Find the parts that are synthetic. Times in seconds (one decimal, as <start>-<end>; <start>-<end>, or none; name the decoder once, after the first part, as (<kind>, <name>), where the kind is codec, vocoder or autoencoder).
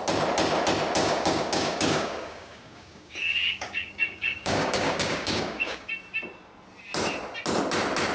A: 1.0-5.9 (codec, DAC)